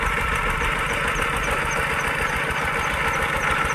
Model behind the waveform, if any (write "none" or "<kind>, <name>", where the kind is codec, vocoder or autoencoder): none